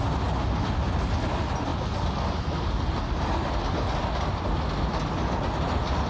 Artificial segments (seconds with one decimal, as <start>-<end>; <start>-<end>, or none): none